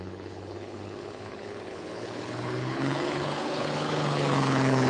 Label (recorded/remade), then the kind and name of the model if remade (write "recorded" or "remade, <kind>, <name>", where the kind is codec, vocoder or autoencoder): remade, codec, HILCodec